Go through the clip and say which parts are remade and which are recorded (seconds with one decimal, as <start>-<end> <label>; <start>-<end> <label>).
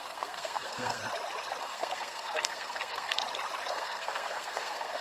0.0-1.0 remade; 1.0-1.6 recorded; 1.6-3.2 remade; 3.2-3.7 recorded; 3.7-5.0 remade